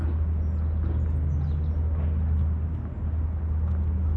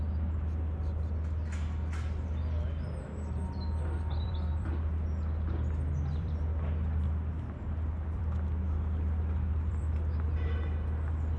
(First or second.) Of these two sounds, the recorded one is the first